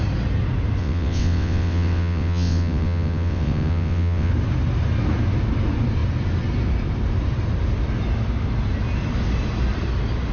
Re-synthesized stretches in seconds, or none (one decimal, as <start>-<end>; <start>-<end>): 0.8-4.3